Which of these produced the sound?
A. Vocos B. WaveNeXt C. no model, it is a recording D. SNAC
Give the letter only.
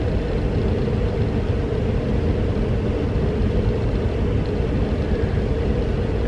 C